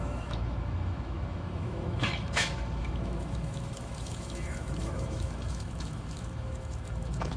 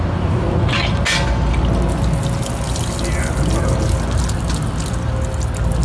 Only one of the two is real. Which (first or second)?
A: second